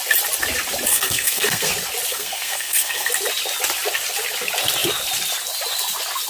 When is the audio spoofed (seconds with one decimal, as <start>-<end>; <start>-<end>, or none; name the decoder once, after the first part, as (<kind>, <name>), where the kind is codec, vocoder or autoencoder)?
0.9-1.7 (codec, SNAC); 2.1-3.1